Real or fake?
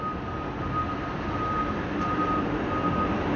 real